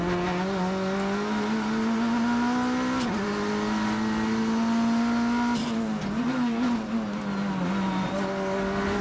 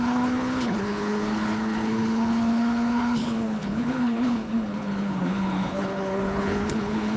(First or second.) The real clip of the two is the first